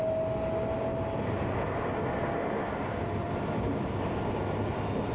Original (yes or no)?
yes